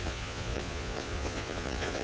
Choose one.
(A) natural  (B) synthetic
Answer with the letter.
B